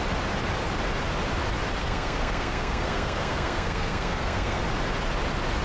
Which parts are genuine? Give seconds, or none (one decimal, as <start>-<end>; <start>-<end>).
0.0-1.8; 4.6-5.6